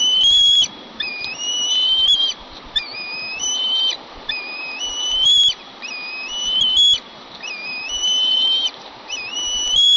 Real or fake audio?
fake